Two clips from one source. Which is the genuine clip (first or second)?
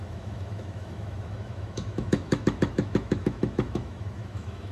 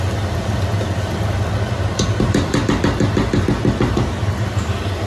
second